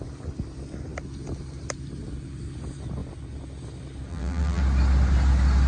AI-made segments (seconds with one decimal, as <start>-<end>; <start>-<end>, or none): 4.1-4.6